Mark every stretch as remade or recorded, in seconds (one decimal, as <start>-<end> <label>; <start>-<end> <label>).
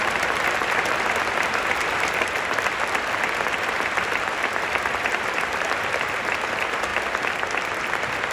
0.0-6.9 remade; 6.9-7.8 recorded; 7.8-8.3 remade